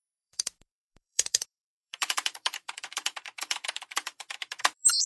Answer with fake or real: fake